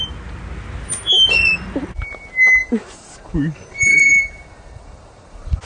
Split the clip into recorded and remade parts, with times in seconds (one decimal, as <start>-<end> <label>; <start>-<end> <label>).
0.0-2.6 recorded; 2.6-5.6 remade